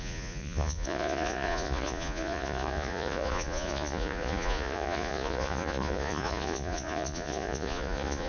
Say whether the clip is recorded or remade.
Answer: remade